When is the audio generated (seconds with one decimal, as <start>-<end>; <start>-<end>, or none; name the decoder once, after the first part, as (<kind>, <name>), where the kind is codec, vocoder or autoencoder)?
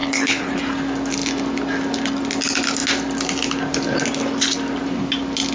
0.0-0.6 (codec, HILCodec)